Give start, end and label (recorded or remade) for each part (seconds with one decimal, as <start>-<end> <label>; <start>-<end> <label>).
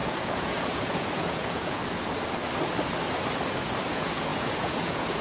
0.0-1.8 remade; 1.8-3.9 recorded; 3.9-5.2 remade